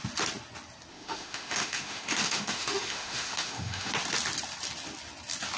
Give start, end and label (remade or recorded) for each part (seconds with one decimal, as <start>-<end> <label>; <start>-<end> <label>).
0.0-0.9 recorded; 0.9-3.9 remade; 3.9-5.6 recorded